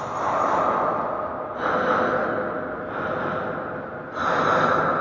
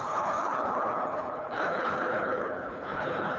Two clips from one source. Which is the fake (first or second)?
second